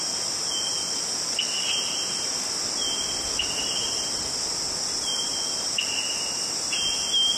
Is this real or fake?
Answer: real